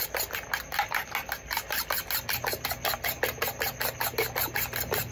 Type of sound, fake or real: real